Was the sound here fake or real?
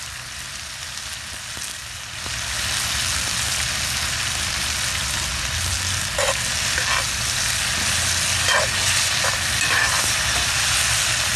real